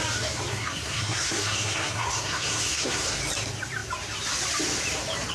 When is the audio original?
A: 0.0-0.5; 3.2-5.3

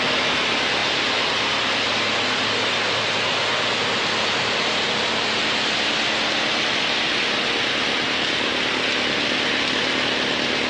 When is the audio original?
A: 0.0-10.7

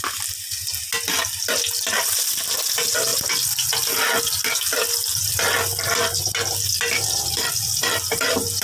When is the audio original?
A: 0.0-8.6

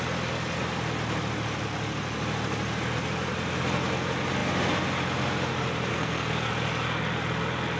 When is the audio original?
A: 0.0-5.9; 6.5-7.8

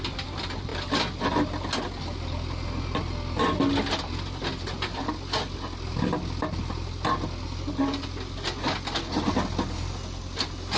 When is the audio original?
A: 0.0-10.8

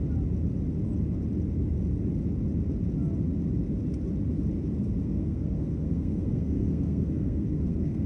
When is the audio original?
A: 0.0-5.0

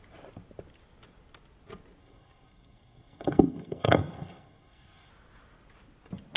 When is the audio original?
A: 0.0-2.0; 5.1-6.4

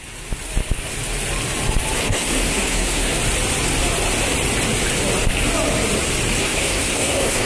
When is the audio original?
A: 0.0-2.0; 3.2-6.4